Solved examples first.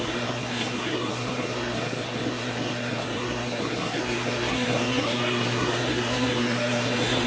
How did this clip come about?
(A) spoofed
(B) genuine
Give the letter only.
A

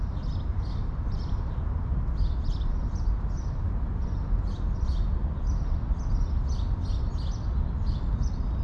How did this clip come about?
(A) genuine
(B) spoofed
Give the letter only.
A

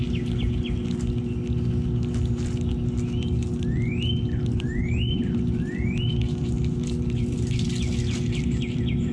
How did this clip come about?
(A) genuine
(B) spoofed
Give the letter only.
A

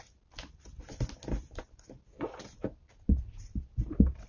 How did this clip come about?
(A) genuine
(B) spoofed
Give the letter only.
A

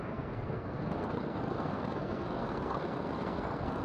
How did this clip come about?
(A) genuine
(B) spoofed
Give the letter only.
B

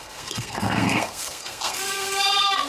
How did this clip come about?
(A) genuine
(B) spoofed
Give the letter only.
B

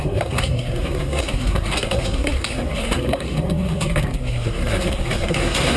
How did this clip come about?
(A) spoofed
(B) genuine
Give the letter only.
A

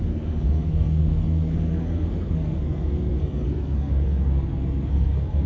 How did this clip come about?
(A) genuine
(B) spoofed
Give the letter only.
B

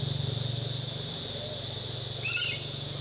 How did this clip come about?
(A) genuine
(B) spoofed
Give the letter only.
A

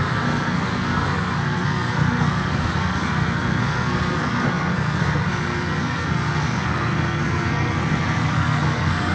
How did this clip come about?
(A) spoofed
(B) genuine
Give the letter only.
A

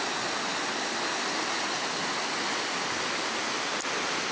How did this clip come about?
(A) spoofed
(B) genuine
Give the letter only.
B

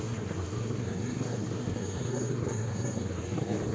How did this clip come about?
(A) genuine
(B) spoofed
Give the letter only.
B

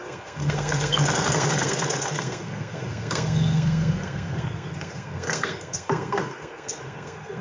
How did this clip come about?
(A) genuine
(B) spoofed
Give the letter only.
B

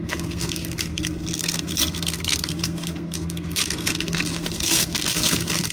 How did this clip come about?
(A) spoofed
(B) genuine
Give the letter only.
A